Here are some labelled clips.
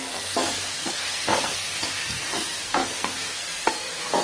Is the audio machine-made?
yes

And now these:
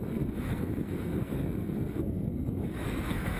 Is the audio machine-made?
yes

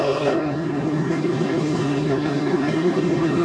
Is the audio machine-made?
yes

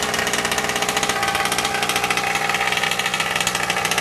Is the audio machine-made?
no